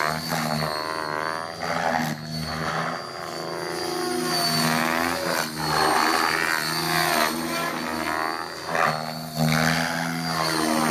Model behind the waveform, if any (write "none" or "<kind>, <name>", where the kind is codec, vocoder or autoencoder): none